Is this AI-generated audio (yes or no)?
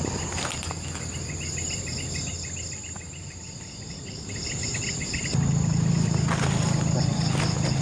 no